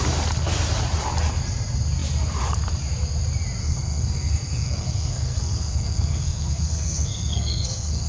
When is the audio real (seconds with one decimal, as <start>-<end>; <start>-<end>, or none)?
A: 0.0-3.6

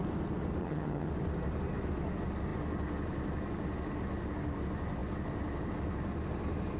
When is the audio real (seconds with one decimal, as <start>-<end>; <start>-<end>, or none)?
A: 0.0-0.6; 1.1-6.8